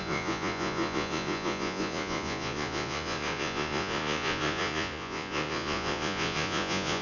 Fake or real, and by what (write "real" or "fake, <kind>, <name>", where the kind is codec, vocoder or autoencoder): fake, vocoder, Vocos